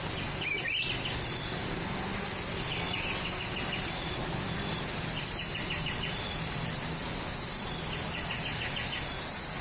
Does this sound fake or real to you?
real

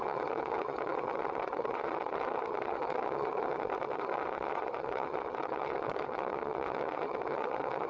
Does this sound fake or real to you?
fake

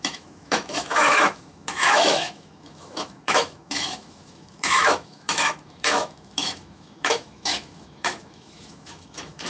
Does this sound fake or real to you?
fake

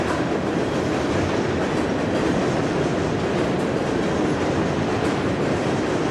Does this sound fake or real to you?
real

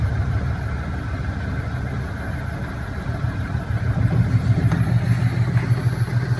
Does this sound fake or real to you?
real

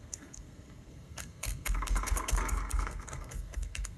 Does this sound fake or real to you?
fake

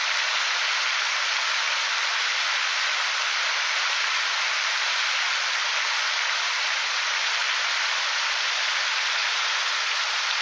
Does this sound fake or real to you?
real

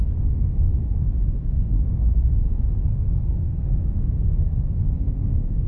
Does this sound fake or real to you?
fake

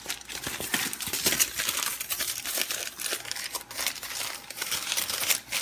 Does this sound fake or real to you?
real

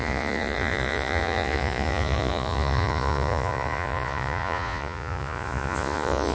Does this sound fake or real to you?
fake